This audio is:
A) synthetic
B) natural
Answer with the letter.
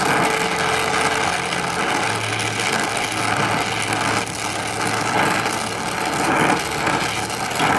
B